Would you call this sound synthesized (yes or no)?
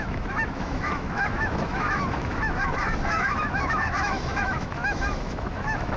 yes